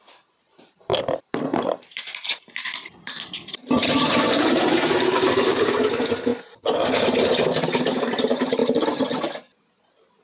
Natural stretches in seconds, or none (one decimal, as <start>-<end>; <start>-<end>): 0.9-1.6; 6.3-7.8; 8.6-10.2